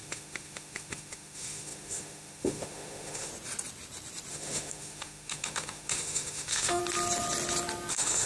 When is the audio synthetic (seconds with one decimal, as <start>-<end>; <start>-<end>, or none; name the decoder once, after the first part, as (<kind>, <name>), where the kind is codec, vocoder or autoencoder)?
0.0-3.3 (autoencoder, DAC-VAE); 4.3-6.8; 7.9-8.3